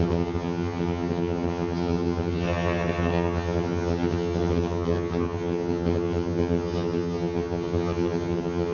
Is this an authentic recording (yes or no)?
no